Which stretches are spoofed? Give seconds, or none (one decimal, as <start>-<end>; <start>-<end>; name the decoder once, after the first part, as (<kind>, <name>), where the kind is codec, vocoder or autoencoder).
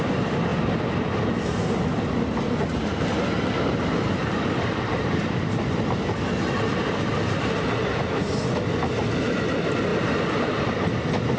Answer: none